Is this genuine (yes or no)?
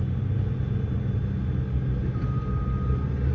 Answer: yes